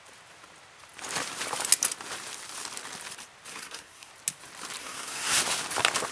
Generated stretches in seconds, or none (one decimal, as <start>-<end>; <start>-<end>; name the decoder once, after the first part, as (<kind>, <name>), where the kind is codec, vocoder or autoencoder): 3.5-4.1 (codec, SNAC); 4.8-5.4